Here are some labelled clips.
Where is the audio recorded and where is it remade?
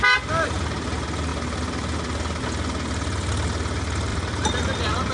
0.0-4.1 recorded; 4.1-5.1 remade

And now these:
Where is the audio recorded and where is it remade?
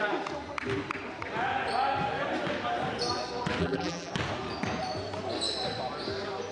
0.0-3.6 recorded; 3.6-4.1 remade; 4.1-6.5 recorded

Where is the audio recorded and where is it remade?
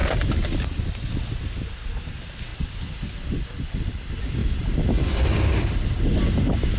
0.0-0.6 remade; 0.6-2.5 recorded; 2.5-3.7 remade; 3.7-4.4 recorded; 4.4-6.3 remade; 6.3-6.8 recorded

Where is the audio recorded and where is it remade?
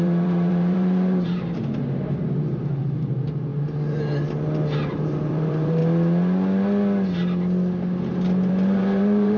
0.0-1.6 remade; 1.6-2.6 recorded; 2.6-3.5 remade; 3.5-4.9 recorded; 4.9-5.8 remade; 5.8-8.5 recorded; 8.5-9.4 remade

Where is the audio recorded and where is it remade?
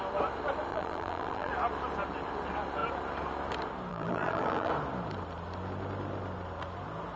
0.0-0.7 recorded; 0.7-1.5 remade; 1.5-3.9 recorded; 3.9-4.7 remade; 4.7-7.2 recorded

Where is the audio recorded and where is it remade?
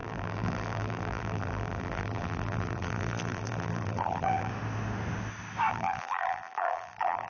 0.0-4.5 remade; 4.5-5.7 recorded; 5.7-7.3 remade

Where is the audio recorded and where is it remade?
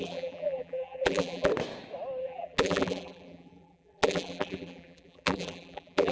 0.0-1.5 remade; 1.5-2.2 recorded; 2.2-6.1 remade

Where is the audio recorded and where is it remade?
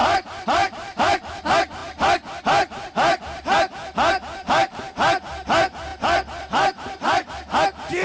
0.0-1.4 remade; 1.4-5.9 recorded; 5.9-7.3 remade; 7.3-8.0 recorded